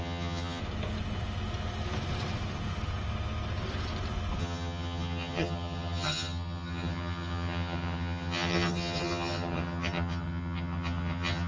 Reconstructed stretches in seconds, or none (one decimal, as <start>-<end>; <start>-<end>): 0.0-0.6; 4.4-11.5